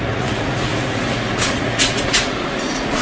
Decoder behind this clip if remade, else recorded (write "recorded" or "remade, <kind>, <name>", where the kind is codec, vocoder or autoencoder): remade, vocoder, Vocos